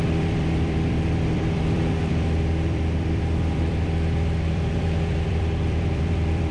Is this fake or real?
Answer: fake